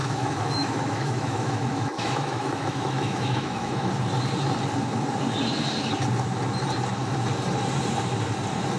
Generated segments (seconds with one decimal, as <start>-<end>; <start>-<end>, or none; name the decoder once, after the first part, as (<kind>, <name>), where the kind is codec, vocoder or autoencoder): 0.0-3.9 (autoencoder, DAC-VAE)